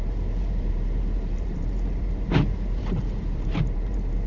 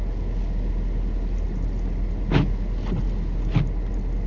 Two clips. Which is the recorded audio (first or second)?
second